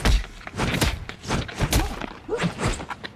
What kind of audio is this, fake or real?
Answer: real